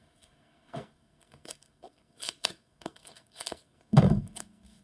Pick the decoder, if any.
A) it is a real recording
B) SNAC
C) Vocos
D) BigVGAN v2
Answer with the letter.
B